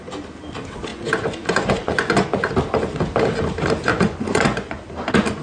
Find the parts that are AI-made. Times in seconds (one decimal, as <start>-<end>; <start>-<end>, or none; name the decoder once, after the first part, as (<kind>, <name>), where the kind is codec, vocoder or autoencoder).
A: 0.9-2.5 (vocoder, Vocos); 3.9-4.8